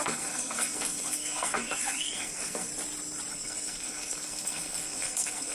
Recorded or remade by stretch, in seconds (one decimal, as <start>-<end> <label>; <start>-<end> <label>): 0.0-2.7 remade; 2.7-3.3 recorded; 3.3-5.5 remade